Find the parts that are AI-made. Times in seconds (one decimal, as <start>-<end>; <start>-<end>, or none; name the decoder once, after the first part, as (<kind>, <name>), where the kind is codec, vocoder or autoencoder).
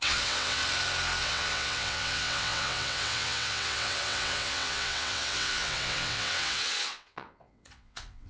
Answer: 0.0-0.6 (vocoder, WaveNeXt); 1.2-8.3